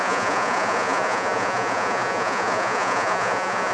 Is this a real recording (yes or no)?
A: no